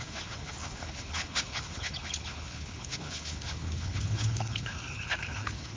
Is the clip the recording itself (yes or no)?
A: no